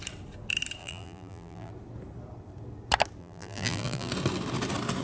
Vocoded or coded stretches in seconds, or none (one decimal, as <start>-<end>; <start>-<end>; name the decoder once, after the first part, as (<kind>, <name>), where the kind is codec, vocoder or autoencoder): 0.8-1.7 (vocoder, BigVGAN v2); 3.2-4.1